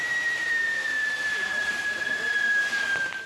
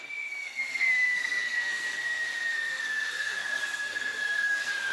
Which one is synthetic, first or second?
second